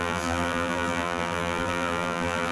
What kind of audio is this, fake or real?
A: fake